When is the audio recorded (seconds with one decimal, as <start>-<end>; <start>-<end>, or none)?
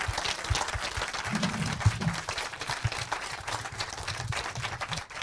0.0-1.3; 4.4-5.2